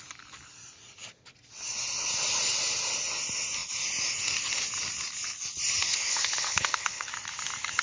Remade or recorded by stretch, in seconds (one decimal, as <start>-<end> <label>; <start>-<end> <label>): 0.0-5.9 recorded; 5.9-7.1 remade; 7.1-7.8 recorded